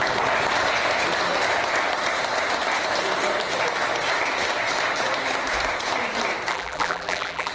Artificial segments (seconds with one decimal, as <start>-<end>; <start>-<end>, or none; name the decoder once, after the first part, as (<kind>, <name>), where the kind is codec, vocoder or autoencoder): 6.5-7.5 (vocoder, BigVGAN v2)